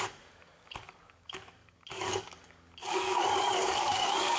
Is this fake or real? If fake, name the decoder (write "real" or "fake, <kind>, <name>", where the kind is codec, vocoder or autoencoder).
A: fake, codec, DAC